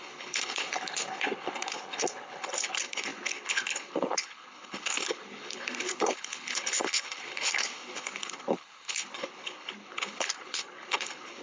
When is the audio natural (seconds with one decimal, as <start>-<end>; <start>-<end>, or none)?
none